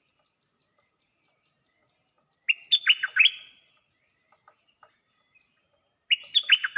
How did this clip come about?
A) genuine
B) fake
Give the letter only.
A